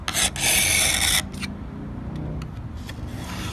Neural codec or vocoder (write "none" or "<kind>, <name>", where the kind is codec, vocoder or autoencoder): none